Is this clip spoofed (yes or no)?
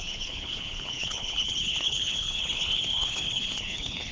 yes